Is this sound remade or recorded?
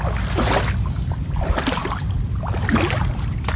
recorded